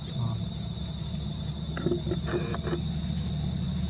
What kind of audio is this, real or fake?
real